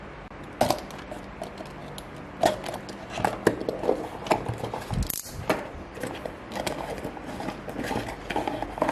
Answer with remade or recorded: recorded